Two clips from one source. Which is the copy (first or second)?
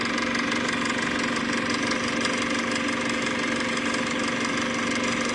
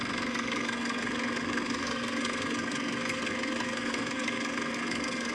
second